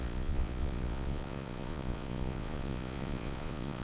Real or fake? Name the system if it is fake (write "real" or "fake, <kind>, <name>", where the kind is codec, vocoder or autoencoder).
fake, vocoder, Vocos